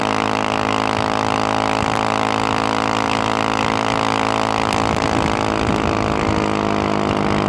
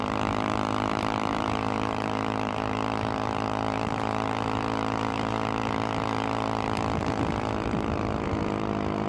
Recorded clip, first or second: first